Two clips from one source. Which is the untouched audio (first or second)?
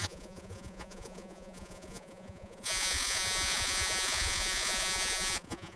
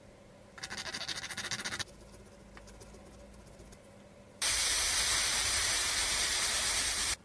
second